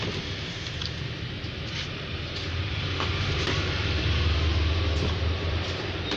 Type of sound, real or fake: fake